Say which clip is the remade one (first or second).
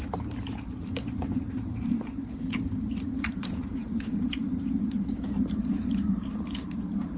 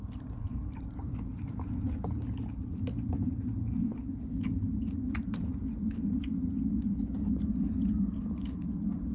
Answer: first